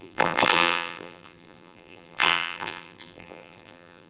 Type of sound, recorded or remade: remade